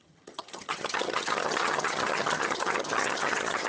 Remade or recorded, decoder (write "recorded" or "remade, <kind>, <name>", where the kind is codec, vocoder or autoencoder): remade, vocoder, HiFi-GAN